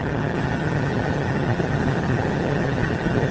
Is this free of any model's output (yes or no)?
no